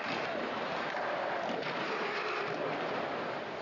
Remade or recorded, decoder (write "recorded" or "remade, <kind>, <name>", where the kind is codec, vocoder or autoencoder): recorded